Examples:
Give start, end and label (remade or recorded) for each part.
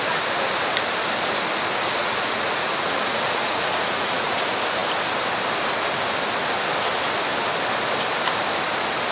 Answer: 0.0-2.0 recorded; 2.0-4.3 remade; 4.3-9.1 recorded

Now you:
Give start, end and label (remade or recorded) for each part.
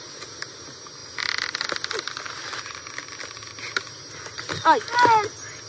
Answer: 0.0-5.7 recorded